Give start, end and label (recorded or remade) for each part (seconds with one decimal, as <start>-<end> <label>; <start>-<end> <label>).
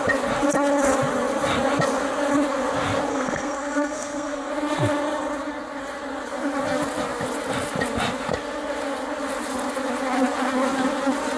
0.0-3.1 recorded; 3.1-4.5 remade; 4.5-11.4 recorded